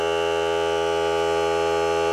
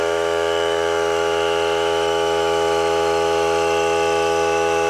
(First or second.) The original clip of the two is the first